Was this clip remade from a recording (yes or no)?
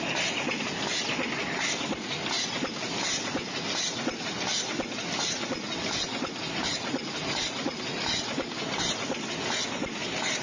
no